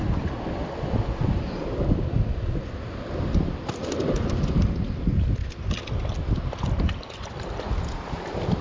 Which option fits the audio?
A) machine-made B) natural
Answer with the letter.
B